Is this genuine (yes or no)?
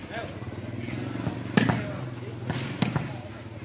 yes